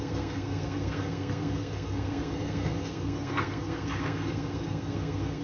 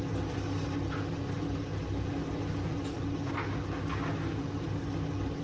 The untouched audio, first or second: second